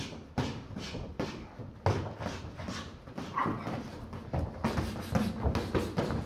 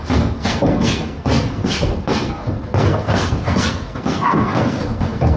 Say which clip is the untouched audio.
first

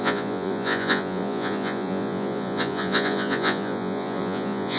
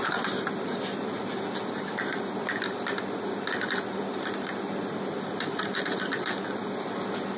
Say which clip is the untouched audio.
second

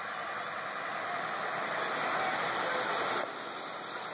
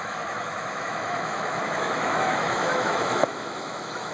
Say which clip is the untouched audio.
first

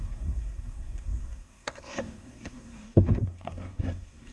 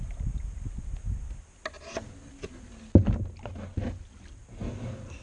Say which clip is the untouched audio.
second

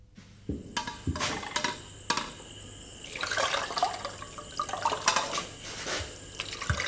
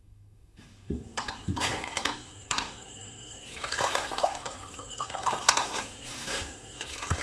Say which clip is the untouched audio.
first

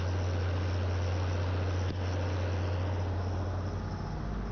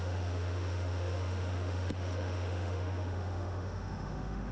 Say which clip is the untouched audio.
first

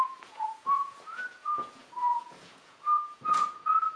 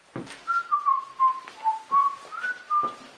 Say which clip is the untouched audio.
second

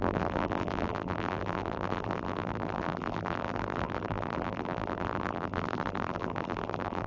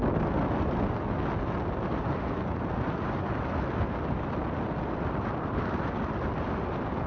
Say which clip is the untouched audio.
second